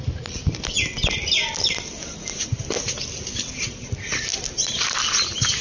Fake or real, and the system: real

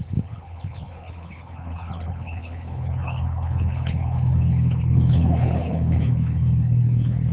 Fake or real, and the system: fake, codec, HILCodec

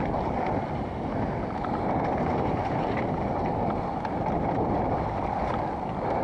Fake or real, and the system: real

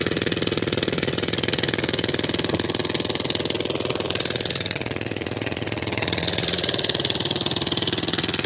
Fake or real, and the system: fake, vocoder, Vocos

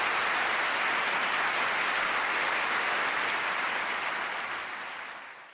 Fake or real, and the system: real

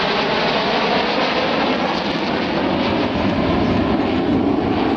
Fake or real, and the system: real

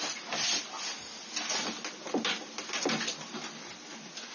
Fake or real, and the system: real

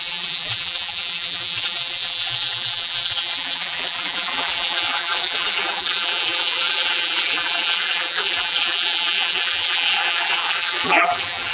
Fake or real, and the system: fake, vocoder, BigVGAN v2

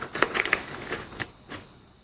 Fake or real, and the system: fake, codec, HILCodec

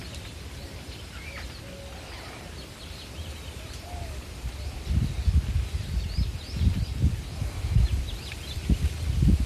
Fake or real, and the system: fake, vocoder, BigVGAN v2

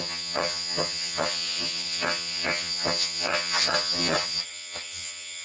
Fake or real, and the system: fake, vocoder, HiFi-GAN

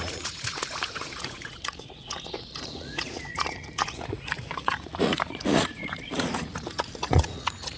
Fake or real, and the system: fake, vocoder, Vocos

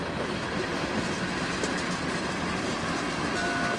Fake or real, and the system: real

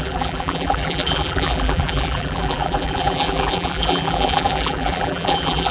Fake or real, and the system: fake, vocoder, BigVGAN v2